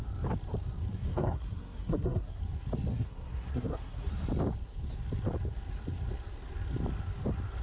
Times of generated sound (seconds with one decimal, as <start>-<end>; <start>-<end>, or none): 0.9-2.4; 2.9-4.1